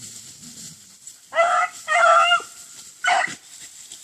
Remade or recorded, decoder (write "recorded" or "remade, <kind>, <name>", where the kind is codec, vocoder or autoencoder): recorded